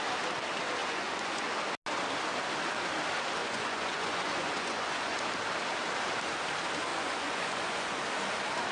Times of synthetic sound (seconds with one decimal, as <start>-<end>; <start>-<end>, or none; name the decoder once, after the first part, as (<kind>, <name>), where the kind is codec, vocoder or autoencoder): 0.8-1.5 (vocoder, Vocos); 3.4-5.2; 6.9-8.0